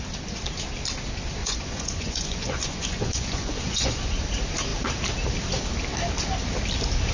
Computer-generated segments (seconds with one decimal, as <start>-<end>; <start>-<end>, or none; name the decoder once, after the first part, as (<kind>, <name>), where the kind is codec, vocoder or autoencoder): 1.4-4.2 (vocoder, Vocos)